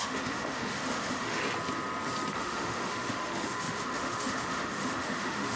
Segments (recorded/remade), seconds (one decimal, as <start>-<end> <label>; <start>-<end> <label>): 0.0-1.4 remade; 1.4-2.3 recorded; 2.3-5.6 remade